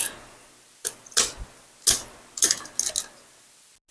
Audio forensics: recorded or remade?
recorded